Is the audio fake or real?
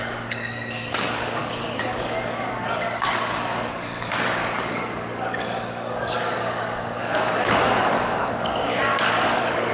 fake